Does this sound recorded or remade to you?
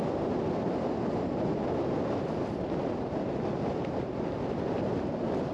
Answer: recorded